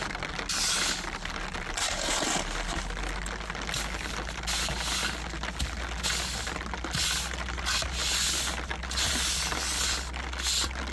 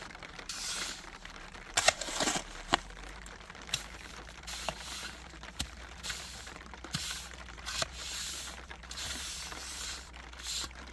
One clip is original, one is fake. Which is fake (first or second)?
second